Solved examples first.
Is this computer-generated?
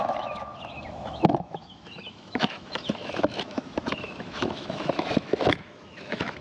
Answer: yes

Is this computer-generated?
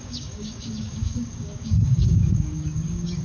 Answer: yes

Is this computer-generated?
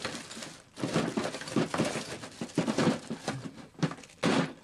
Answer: no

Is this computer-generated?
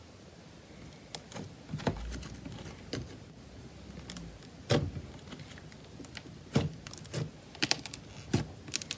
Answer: no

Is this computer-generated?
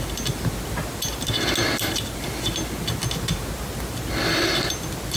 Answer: no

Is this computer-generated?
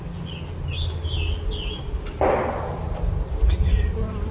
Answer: no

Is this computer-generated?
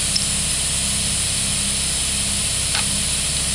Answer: no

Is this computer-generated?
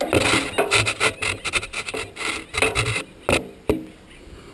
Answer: no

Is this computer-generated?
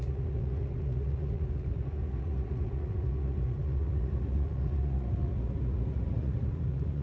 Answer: yes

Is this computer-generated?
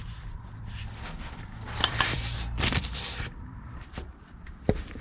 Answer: yes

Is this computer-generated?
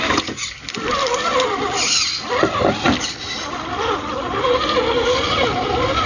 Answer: no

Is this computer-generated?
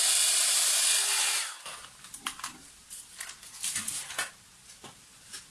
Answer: yes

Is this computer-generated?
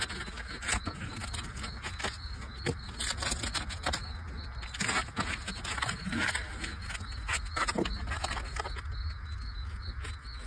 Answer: no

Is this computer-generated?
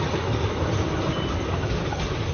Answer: no